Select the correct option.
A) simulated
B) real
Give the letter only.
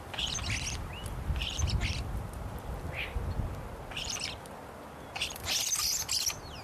B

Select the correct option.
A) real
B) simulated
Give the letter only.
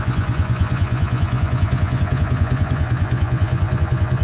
B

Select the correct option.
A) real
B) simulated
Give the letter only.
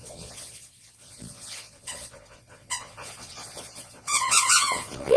B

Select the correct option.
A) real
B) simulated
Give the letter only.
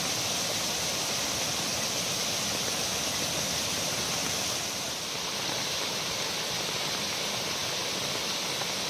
A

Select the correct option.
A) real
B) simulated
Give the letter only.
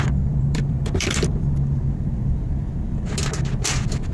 B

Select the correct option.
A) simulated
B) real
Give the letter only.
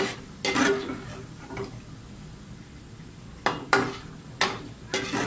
B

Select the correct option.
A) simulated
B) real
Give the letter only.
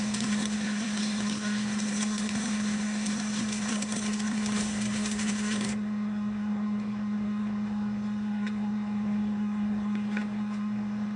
A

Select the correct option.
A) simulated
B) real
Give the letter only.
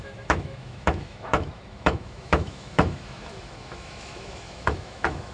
A